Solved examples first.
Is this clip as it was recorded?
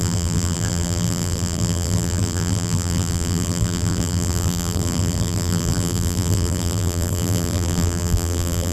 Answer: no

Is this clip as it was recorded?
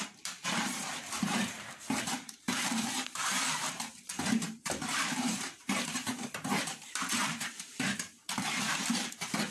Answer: no